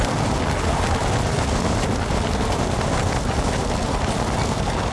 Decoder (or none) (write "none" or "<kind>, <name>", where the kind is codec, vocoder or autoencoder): none